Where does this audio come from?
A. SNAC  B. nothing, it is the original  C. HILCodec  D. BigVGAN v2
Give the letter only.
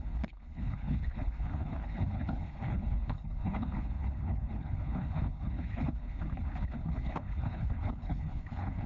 C